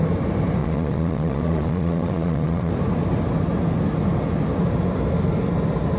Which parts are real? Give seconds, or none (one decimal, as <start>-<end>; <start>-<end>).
0.0-0.6; 2.7-6.0